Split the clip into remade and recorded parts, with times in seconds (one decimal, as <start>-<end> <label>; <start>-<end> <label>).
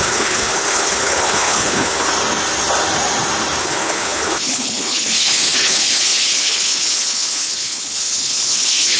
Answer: 0.0-2.1 remade; 2.1-3.6 recorded; 3.6-9.0 remade